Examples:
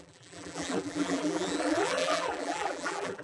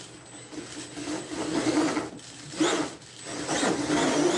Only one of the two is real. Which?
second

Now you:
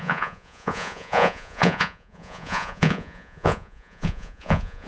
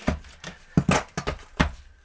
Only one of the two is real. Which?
second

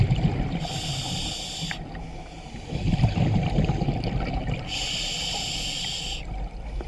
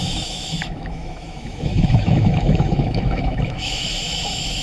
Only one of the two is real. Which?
first